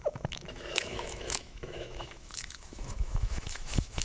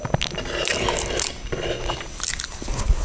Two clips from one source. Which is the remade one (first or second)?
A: first